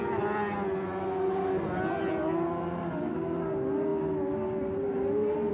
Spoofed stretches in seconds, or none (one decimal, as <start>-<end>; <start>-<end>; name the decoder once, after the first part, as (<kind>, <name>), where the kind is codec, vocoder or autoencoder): none

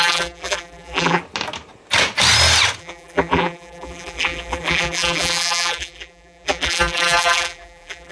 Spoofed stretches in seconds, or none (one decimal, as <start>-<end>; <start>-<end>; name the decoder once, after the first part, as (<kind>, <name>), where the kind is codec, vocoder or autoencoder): 0.0-1.2 (vocoder, BigVGAN v2); 2.8-8.1

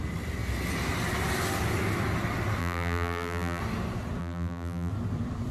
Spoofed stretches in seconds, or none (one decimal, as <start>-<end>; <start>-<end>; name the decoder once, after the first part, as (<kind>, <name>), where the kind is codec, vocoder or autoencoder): 2.6-3.6 (vocoder, BigVGAN v2); 4.2-4.9